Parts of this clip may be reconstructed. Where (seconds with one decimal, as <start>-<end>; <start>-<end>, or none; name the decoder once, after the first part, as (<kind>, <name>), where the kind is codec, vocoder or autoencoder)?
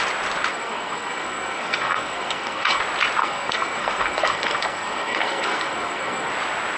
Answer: 0.5-2.8 (codec, SNAC); 3.2-6.3